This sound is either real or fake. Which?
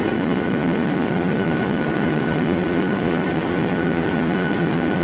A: fake